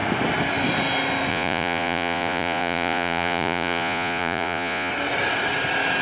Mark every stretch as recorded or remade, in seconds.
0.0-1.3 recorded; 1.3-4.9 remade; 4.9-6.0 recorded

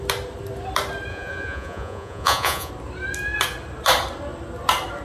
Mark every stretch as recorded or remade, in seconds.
0.0-1.1 recorded; 1.1-2.7 remade; 2.7-5.0 recorded

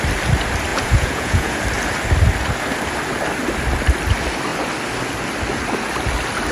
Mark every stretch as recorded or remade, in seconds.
0.0-0.7 recorded; 0.7-1.6 remade; 1.6-6.5 recorded

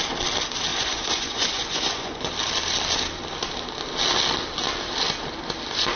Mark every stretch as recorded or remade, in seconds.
0.0-0.7 recorded; 0.7-2.3 remade; 2.3-6.0 recorded

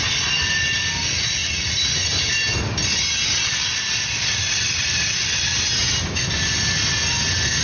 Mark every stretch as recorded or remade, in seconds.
0.0-7.6 recorded

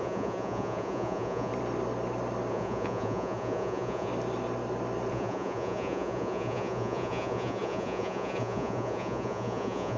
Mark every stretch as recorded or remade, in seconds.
0.0-1.5 remade; 1.5-2.5 recorded; 2.5-4.1 remade; 4.1-5.1 recorded; 5.1-10.0 remade